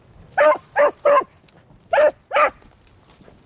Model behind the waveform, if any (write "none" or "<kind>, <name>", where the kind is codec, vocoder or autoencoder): none